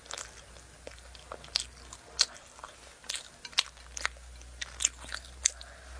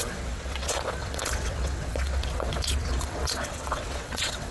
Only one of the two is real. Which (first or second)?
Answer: first